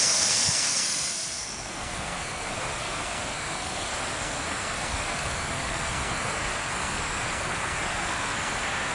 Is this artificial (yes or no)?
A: yes